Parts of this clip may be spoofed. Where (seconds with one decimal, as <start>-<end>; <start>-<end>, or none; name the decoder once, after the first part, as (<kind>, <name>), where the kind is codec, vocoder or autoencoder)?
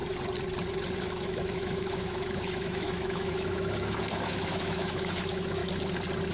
1.0-5.6 (autoencoder, DAC-VAE)